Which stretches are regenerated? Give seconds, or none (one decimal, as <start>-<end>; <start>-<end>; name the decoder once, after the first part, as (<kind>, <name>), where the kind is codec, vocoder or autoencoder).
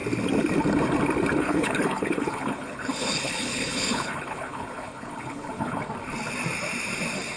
1.4-5.8 (codec, HILCodec)